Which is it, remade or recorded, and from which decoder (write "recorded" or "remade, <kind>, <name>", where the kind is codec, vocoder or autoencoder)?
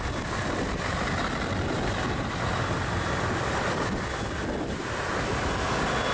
recorded